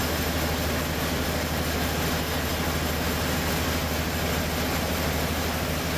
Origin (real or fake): real